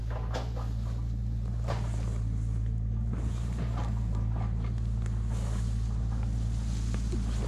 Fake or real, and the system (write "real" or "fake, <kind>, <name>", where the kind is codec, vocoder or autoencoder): real